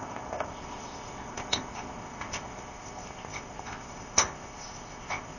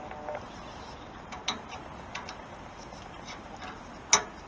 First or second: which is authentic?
second